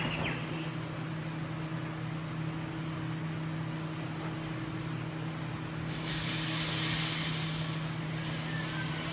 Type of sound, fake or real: real